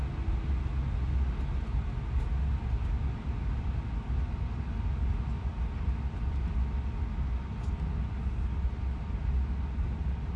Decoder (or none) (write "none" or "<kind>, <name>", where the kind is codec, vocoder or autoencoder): none